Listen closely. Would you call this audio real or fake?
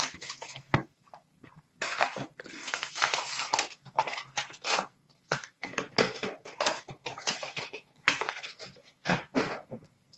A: fake